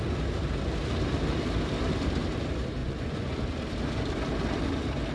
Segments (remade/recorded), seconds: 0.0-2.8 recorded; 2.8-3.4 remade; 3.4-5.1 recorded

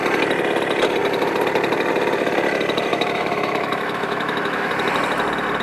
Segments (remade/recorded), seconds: 0.0-2.9 recorded; 2.9-4.7 remade; 4.7-5.6 recorded

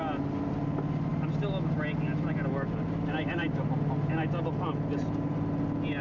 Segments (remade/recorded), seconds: 0.0-6.0 recorded

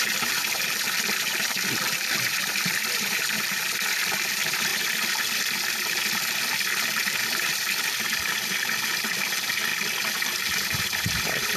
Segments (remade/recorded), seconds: 0.0-4.7 remade; 4.7-7.2 recorded; 7.2-11.6 remade

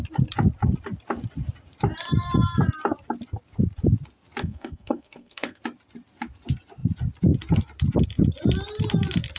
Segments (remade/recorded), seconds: 0.0-4.4 recorded; 4.4-5.6 remade; 5.6-9.4 recorded

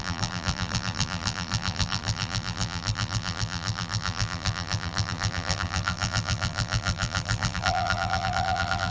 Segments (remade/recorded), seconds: 0.0-8.9 remade

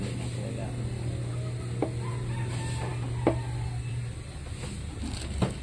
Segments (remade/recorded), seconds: 0.0-5.6 recorded

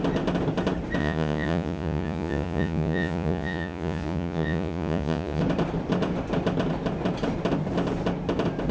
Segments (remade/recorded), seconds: 0.0-1.0 recorded; 1.0-5.4 remade; 5.4-8.7 recorded